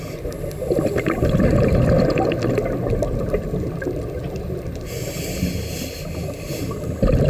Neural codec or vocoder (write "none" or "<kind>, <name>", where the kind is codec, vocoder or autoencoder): none